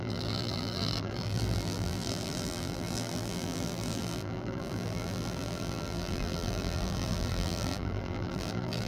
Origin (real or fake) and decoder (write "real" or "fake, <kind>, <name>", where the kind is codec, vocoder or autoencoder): fake, vocoder, BigVGAN v2